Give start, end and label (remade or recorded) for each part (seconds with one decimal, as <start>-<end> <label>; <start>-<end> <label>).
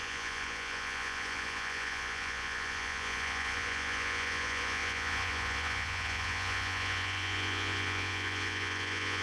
0.0-9.2 remade